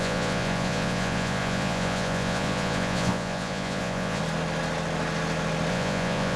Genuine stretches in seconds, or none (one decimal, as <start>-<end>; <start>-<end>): 4.2-5.7